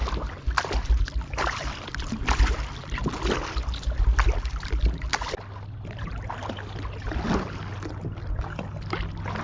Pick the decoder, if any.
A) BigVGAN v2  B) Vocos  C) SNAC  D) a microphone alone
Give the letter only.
D